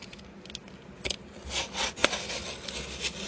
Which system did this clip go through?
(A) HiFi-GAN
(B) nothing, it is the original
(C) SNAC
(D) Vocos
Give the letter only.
B